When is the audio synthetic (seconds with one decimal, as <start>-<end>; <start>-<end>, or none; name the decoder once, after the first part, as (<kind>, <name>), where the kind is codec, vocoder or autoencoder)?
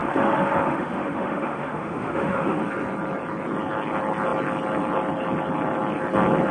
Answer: 0.0-2.6 (autoencoder, DAC-VAE)